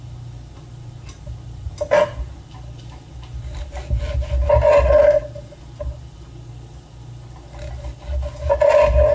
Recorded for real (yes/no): yes